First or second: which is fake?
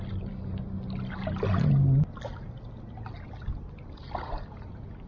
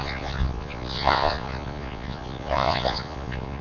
second